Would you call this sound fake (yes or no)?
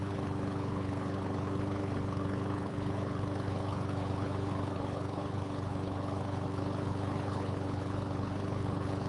yes